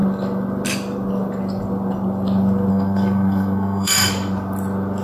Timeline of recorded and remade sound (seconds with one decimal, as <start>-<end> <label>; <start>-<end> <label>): 0.0-2.7 recorded; 2.7-4.1 remade; 4.1-5.0 recorded